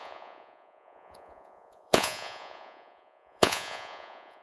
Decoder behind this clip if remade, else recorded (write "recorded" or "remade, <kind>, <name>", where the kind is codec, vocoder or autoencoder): remade, vocoder, Vocos